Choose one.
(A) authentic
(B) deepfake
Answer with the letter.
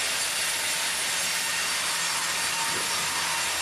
A